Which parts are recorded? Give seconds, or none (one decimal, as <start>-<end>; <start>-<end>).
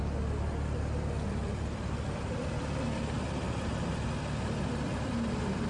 0.0-1.4; 2.5-5.7